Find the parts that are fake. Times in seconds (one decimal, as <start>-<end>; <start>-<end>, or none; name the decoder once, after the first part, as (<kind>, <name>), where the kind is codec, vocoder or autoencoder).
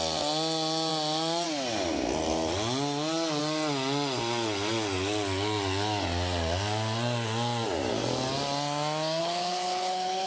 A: 9.2-10.3 (codec, HILCodec)